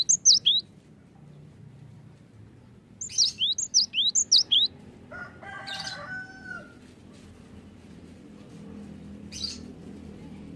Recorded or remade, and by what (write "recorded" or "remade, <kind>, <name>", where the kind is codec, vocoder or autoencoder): recorded